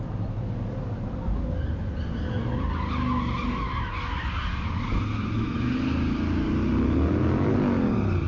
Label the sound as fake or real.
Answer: real